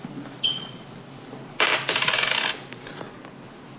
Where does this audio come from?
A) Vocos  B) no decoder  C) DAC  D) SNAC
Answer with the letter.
B